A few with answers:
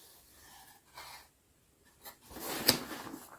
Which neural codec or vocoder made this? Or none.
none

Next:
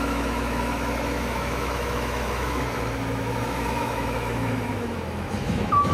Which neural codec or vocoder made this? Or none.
autoencoder, DAC-VAE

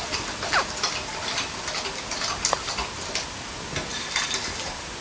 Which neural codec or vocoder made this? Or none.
none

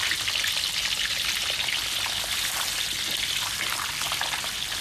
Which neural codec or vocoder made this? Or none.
none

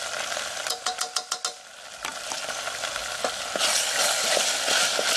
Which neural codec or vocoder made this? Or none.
none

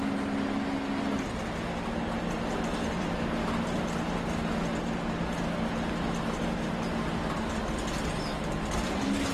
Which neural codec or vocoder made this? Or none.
none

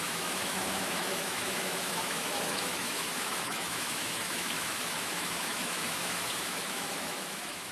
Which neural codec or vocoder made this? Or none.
autoencoder, DAC-VAE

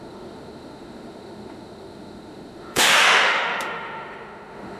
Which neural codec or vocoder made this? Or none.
autoencoder, DAC-VAE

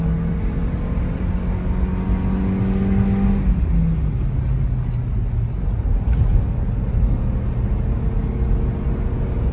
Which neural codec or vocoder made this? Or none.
none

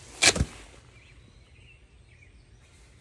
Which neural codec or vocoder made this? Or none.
none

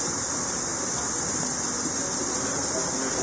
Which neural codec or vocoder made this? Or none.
none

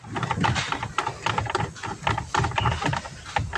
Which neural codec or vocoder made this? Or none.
none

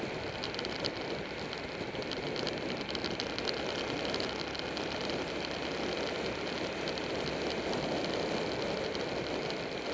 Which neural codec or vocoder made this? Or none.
none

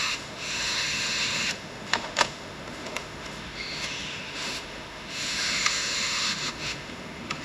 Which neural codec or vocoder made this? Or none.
autoencoder, DAC-VAE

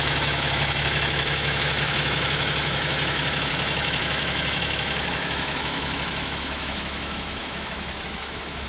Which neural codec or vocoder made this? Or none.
autoencoder, DAC-VAE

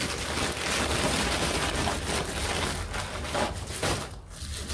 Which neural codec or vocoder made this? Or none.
none